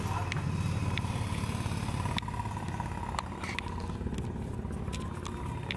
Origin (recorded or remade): recorded